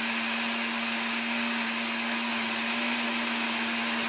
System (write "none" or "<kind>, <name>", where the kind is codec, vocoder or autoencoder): none